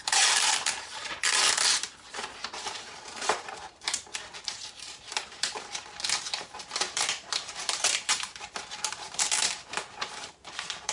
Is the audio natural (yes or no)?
no